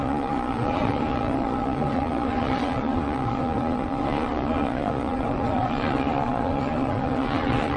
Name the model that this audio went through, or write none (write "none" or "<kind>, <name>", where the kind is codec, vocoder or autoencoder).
vocoder, Vocos